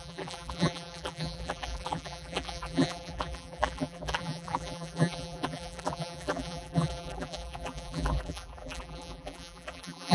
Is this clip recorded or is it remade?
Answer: remade